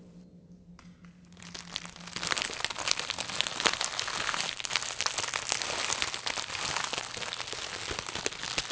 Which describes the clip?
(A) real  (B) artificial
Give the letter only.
A